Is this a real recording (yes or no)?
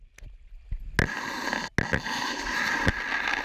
yes